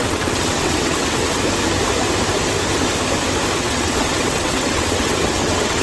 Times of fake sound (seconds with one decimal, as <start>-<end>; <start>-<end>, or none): 0.0-1.4; 3.6-5.8